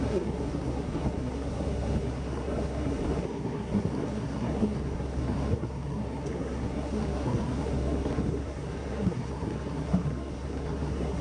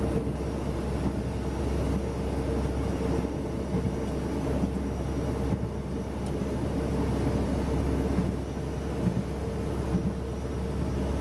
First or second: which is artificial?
first